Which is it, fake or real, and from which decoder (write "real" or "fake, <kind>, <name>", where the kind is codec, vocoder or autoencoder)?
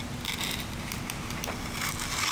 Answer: real